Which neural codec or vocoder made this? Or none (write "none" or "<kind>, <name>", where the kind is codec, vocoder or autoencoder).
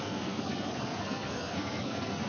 codec, SNAC